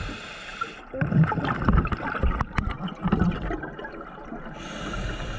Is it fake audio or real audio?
real